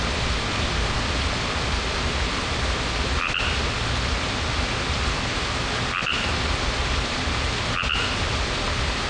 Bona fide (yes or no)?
yes